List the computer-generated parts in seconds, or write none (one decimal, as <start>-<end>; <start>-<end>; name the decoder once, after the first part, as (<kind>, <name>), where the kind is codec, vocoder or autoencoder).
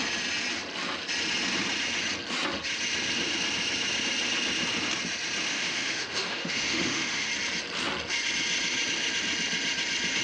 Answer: 5.5-7.3 (autoencoder, DAC-VAE)